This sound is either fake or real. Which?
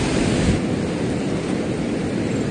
real